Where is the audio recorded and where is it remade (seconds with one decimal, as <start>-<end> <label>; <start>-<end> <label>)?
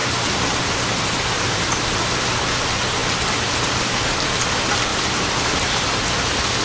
0.0-1.8 remade; 1.8-4.9 recorded; 4.9-6.6 remade